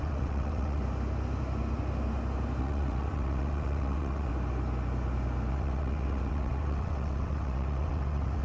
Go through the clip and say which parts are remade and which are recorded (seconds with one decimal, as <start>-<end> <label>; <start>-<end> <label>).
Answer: 0.0-0.8 remade; 0.8-2.6 recorded; 2.6-4.3 remade; 4.3-5.5 recorded; 5.5-8.4 remade